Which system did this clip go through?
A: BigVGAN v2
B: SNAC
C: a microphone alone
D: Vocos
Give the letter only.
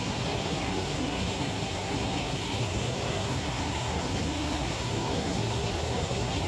B